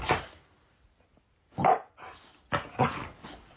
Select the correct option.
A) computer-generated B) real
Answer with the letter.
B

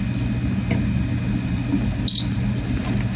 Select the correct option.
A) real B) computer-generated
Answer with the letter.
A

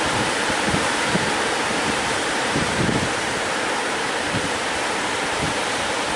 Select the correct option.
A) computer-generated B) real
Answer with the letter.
A